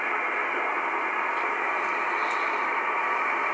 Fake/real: fake